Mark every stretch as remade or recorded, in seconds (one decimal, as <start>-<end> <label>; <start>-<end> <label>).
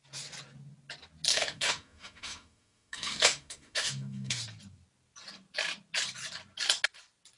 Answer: 0.0-1.3 recorded; 1.3-4.4 remade; 4.4-7.4 recorded